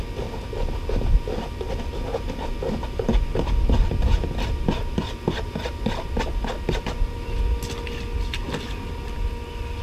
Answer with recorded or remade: recorded